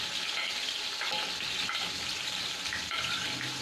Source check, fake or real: real